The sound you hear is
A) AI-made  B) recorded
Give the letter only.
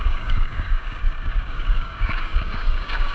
A